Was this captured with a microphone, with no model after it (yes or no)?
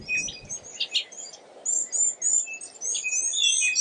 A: yes